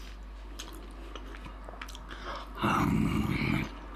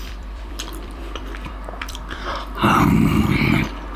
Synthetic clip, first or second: second